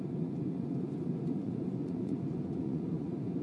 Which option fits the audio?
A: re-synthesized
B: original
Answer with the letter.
A